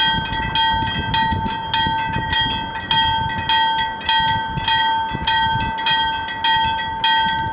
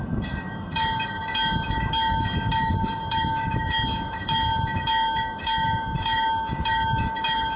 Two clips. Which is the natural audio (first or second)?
first